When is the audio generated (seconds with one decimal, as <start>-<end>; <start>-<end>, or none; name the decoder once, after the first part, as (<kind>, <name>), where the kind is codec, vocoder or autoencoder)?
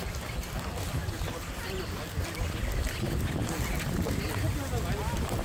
none